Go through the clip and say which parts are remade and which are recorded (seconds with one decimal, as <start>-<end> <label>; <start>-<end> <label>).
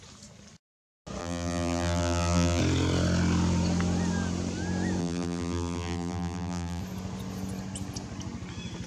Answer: 0.0-1.2 recorded; 1.2-2.6 remade; 2.6-5.0 recorded; 5.0-6.8 remade; 6.8-8.9 recorded